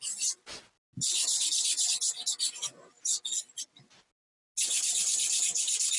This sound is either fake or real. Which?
real